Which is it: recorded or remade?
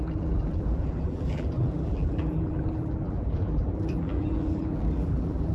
remade